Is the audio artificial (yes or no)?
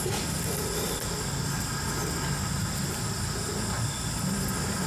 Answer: no